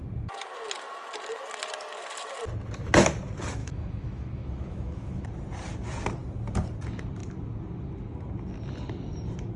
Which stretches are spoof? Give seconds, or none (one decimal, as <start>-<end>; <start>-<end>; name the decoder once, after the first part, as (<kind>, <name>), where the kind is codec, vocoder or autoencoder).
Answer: 3.6-5.2 (autoencoder, DAC-VAE)